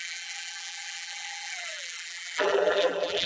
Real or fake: fake